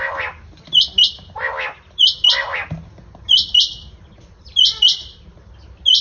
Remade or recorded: recorded